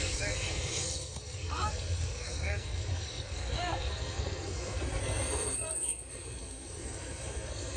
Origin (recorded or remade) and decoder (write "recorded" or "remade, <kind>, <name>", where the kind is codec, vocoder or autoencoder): remade, codec, SNAC